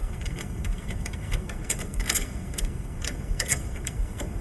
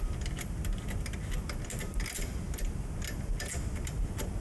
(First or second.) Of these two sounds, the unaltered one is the second